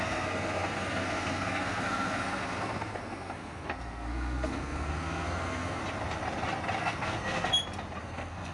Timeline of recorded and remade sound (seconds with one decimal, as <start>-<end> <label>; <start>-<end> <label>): 0.0-5.8 remade; 5.8-6.8 recorded; 6.8-7.5 remade; 7.5-8.0 recorded; 8.0-8.5 remade